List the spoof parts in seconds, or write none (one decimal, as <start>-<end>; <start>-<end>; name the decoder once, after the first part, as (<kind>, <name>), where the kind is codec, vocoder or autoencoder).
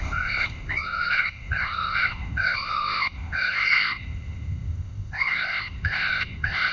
0.0-6.7 (codec, ZipCodec)